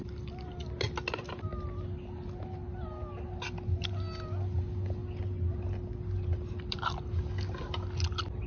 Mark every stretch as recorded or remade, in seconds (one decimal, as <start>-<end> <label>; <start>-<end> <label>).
0.0-8.5 recorded